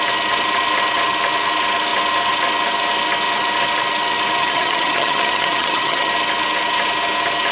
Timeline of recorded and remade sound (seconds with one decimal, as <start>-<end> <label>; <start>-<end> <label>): 0.0-4.4 recorded; 4.4-6.1 remade; 6.1-7.5 recorded